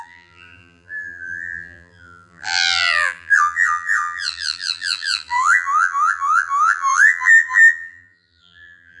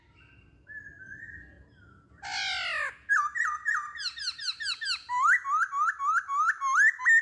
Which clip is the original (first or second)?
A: second